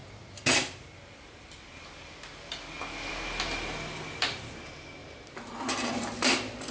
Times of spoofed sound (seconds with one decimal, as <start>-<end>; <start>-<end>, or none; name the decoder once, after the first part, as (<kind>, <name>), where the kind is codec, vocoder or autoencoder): none